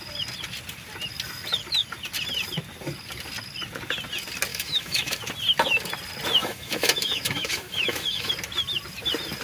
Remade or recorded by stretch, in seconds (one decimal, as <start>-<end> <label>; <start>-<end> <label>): 0.0-4.5 recorded; 4.5-5.2 remade; 5.2-6.4 recorded; 6.4-8.3 remade; 8.3-9.4 recorded